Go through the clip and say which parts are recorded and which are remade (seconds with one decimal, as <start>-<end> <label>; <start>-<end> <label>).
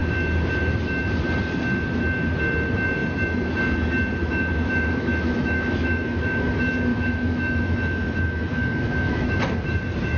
0.0-4.2 recorded; 4.2-6.5 remade; 6.5-6.9 recorded; 6.9-9.3 remade; 9.3-10.2 recorded